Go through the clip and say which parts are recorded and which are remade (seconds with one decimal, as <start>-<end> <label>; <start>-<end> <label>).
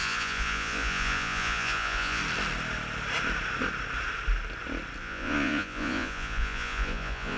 0.0-2.2 remade; 2.2-5.0 recorded; 5.0-7.4 remade